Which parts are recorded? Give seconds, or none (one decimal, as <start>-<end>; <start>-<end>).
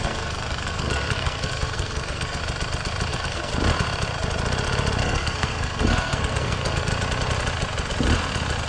2.4-3.1; 3.5-5.0; 6.9-8.7